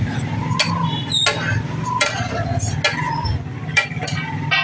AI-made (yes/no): no